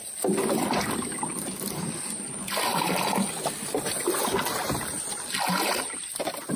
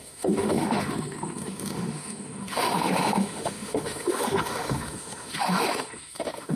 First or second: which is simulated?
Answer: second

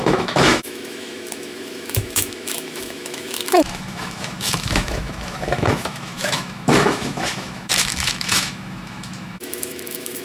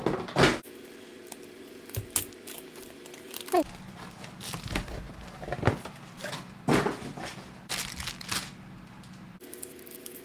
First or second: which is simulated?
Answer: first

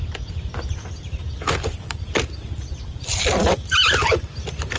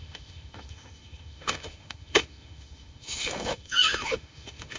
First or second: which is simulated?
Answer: second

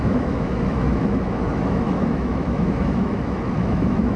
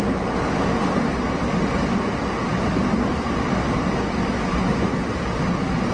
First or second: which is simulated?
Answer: first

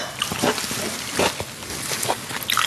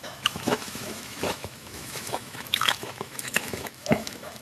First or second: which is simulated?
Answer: second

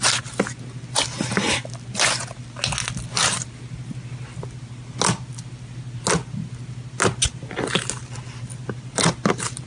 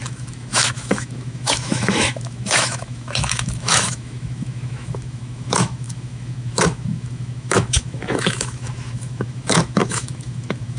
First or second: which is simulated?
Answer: second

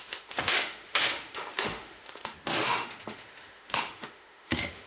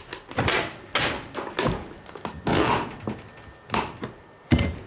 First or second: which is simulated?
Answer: first